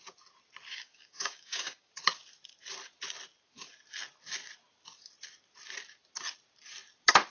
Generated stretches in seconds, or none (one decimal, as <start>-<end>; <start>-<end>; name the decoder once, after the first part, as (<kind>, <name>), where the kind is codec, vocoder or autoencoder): 0.7-1.9 (codec, DAC)